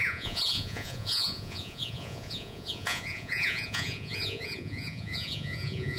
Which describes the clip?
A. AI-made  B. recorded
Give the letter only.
A